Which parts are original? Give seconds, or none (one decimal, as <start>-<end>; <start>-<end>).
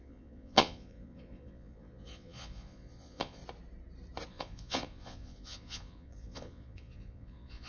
3.4-4.3